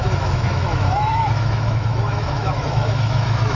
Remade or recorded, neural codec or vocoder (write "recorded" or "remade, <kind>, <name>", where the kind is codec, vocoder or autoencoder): remade, autoencoder, DAC-VAE